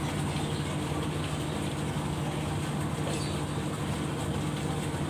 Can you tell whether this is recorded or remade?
recorded